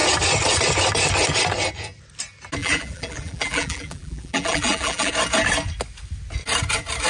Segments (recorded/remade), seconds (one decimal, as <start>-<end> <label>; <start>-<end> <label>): 0.0-2.6 recorded; 2.6-5.1 remade; 5.1-7.1 recorded